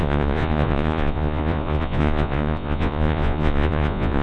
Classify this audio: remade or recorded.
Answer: remade